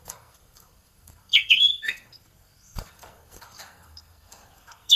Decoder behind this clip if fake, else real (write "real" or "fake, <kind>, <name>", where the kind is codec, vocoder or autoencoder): fake, codec, SNAC